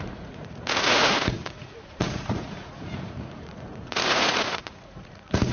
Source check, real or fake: fake